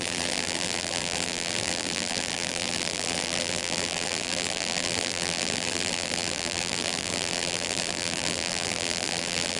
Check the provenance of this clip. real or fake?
fake